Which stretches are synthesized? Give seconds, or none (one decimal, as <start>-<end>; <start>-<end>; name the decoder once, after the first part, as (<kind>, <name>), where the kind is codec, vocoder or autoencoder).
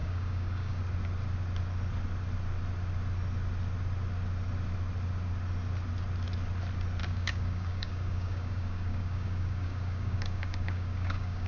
0.0-0.8 (codec, DAC); 7.0-11.5